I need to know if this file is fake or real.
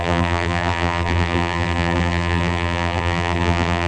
fake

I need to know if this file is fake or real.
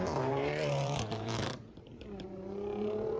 fake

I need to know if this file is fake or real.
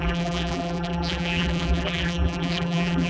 fake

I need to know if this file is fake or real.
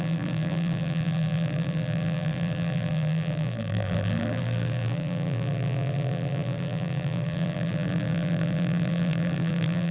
fake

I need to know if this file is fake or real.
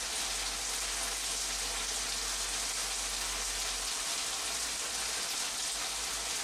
real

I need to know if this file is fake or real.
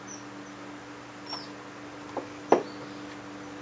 real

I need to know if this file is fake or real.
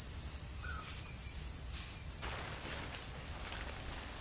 real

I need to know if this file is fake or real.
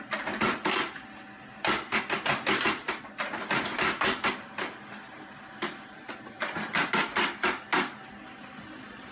real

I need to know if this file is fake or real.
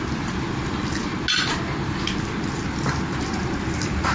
real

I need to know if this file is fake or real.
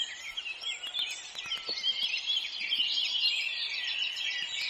real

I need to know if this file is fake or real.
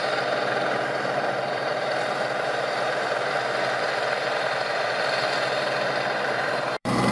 fake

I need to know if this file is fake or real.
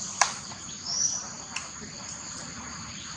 fake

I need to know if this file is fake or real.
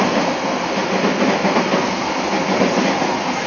real